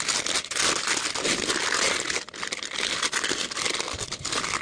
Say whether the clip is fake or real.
real